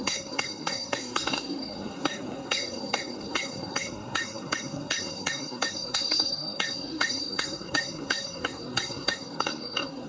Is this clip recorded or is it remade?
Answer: remade